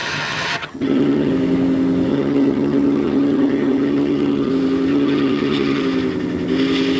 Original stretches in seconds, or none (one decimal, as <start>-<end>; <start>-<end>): 1.3-2.1; 4.5-4.9; 5.8-7.0

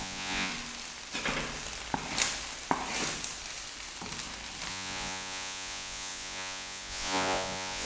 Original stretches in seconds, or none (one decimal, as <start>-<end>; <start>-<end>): 0.5-4.7

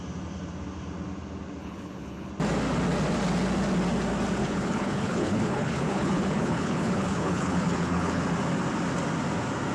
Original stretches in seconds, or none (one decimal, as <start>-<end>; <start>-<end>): 0.0-1.6; 2.3-4.4; 8.2-9.7

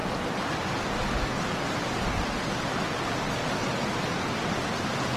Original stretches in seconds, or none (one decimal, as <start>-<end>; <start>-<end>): 0.0-3.6; 4.1-5.2

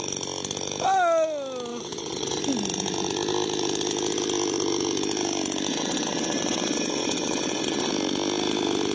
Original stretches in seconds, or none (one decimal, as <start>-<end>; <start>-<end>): 0.0-1.7; 2.4-5.7; 7.9-8.9